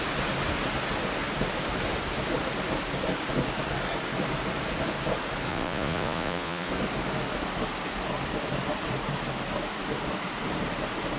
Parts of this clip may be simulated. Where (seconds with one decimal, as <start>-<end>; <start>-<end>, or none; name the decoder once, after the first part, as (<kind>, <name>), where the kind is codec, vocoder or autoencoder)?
5.5-6.7 (vocoder, Vocos)